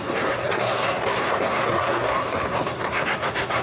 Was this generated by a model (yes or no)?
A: yes